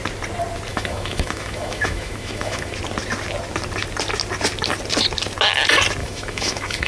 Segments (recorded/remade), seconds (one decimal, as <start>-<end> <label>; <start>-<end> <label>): 0.0-0.7 recorded; 0.7-2.7 remade; 2.7-6.0 recorded; 6.0-6.9 remade